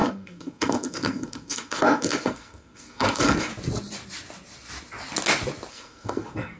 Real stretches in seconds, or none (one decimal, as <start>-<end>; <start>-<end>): 3.5-5.7